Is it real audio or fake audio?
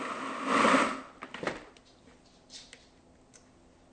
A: real